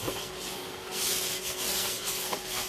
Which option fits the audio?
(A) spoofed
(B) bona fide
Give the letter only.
A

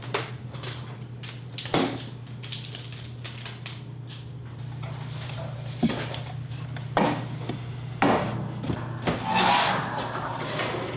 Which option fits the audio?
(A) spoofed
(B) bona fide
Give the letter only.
B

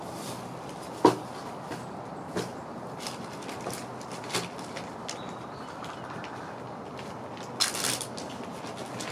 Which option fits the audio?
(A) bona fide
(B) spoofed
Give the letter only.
A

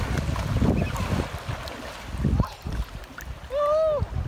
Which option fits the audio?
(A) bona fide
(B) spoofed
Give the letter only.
A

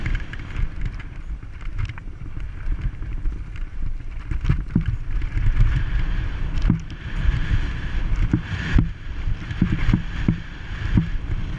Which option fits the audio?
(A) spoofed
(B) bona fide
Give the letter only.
A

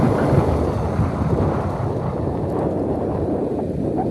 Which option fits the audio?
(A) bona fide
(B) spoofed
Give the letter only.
A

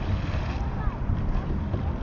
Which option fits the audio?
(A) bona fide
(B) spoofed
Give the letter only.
A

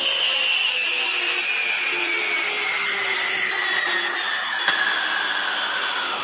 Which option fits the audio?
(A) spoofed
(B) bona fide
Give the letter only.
B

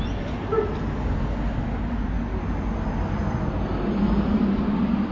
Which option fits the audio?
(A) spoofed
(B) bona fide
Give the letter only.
B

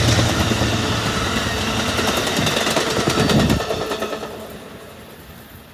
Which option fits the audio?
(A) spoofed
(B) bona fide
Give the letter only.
B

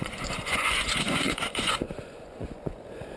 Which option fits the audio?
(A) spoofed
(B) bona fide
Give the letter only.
A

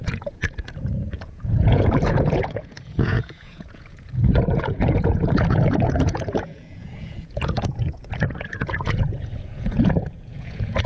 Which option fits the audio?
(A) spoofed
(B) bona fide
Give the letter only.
A